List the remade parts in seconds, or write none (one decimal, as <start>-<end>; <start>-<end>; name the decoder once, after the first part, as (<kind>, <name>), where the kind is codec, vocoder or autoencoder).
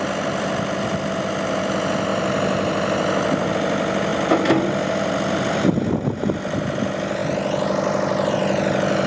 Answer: none